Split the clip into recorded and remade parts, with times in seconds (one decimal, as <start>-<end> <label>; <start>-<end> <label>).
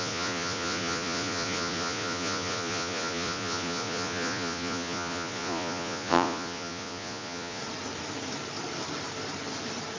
0.0-7.6 remade; 7.6-10.0 recorded